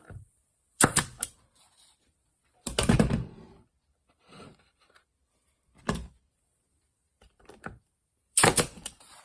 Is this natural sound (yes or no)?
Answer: no